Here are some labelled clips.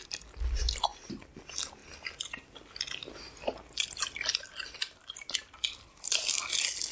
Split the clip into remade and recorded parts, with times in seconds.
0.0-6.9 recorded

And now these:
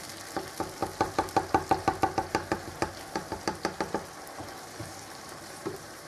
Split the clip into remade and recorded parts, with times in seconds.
0.0-4.8 recorded; 4.8-6.1 remade